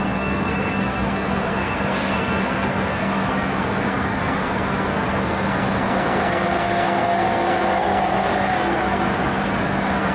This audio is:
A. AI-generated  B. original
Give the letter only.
A